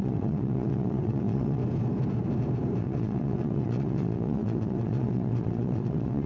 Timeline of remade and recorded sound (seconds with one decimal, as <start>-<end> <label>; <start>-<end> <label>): 0.0-1.6 remade; 1.6-2.8 recorded; 2.8-6.3 remade